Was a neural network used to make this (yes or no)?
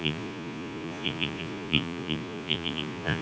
yes